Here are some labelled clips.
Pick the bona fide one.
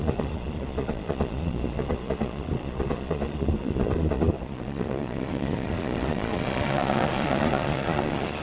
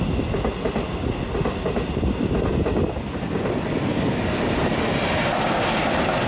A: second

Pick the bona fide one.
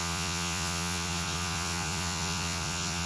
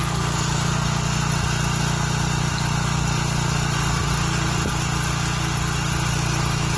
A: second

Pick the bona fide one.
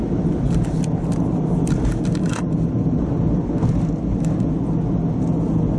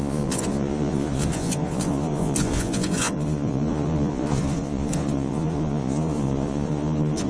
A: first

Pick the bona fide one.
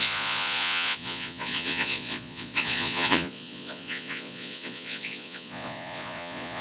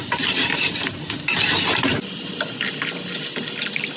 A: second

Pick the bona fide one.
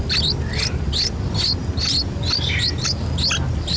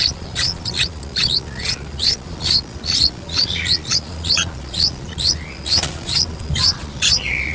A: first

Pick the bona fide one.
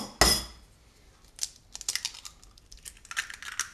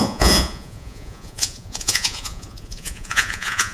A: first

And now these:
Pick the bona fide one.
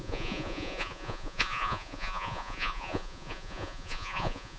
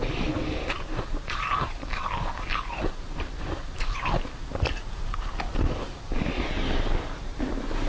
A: second